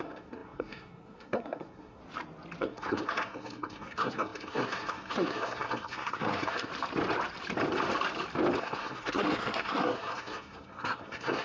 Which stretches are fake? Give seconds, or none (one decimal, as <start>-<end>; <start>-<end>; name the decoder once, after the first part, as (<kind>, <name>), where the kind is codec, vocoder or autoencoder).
0.0-2.0 (codec, SNAC); 2.6-6.7; 8.6-11.4